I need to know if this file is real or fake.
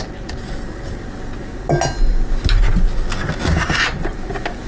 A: real